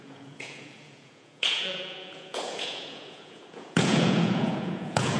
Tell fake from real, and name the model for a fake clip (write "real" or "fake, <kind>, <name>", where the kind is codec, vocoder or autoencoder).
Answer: fake, vocoder, Vocos